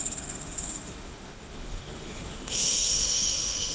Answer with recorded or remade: remade